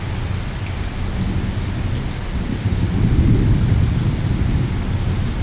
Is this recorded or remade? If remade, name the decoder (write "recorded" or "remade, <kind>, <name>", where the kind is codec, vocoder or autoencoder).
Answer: recorded